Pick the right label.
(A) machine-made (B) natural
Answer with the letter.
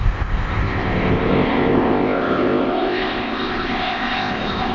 A